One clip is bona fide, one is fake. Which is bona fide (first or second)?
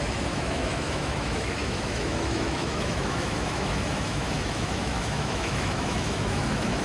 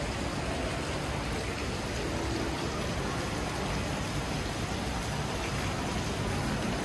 second